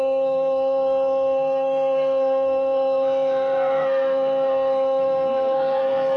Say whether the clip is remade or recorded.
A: remade